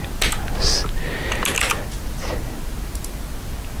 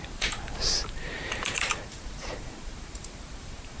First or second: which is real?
first